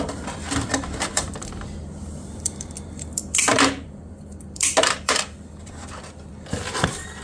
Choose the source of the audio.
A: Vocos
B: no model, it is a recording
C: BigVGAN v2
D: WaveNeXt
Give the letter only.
C